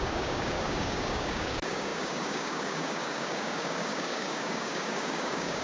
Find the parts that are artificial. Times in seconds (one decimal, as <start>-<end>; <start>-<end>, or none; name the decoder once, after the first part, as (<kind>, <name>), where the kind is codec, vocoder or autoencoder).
0.0-5.6 (codec, DAC)